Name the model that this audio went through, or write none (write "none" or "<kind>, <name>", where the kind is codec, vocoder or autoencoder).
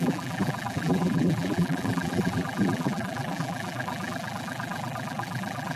vocoder, BigVGAN v2